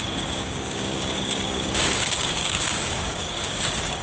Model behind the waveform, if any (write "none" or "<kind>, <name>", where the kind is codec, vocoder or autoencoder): codec, DAC